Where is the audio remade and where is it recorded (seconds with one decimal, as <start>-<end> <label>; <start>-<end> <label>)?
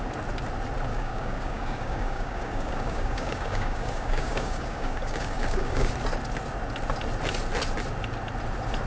0.0-0.9 recorded; 0.9-5.9 remade; 5.9-8.9 recorded